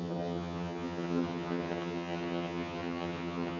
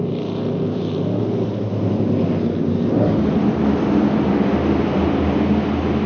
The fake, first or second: first